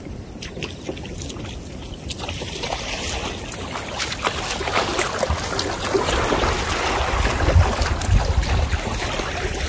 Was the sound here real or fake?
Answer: real